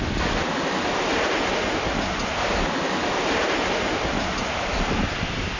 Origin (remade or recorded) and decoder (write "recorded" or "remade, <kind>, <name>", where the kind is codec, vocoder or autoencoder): recorded